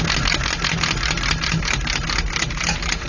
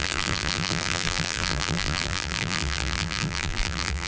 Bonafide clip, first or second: first